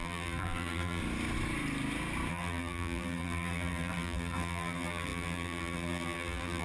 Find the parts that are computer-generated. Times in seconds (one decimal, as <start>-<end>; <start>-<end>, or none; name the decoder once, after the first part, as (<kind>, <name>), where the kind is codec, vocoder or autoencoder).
0.0-1.0 (vocoder, BigVGAN v2); 2.3-6.6